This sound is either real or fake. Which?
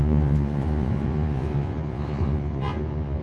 fake